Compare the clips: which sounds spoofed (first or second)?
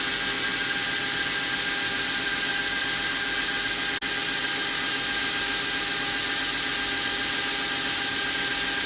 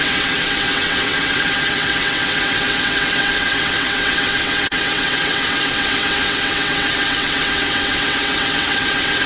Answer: second